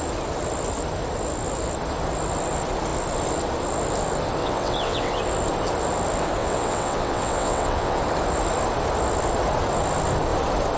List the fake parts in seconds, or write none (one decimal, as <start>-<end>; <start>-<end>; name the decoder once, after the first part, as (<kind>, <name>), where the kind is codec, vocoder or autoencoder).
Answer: 4.4-5.2 (vocoder, WaveNeXt); 6.4-8.0